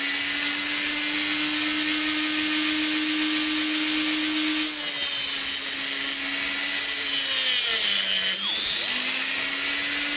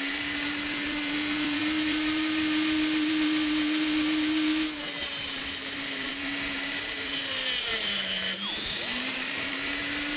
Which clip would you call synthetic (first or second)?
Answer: second